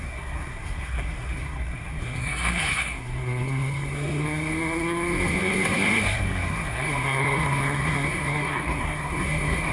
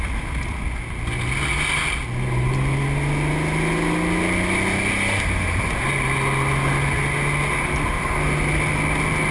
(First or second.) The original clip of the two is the second